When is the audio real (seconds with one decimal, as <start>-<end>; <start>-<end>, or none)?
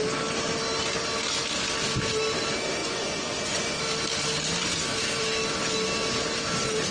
0.0-2.8; 3.8-6.9